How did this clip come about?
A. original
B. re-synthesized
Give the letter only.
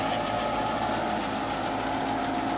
A